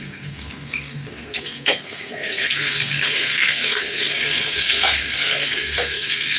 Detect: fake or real fake